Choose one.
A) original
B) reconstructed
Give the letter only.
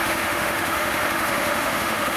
B